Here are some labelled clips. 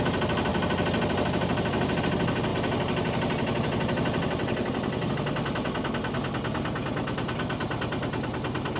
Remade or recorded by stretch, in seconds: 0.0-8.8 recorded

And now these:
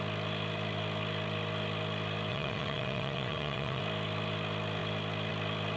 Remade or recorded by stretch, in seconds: 0.0-2.3 recorded; 2.3-3.8 remade; 3.8-5.8 recorded